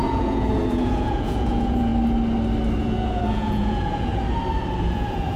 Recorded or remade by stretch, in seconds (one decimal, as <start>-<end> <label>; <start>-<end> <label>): 0.0-1.9 remade; 1.9-2.8 recorded; 2.8-4.1 remade; 4.1-4.8 recorded; 4.8-5.4 remade